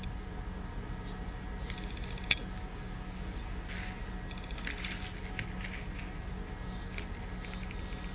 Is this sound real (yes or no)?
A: yes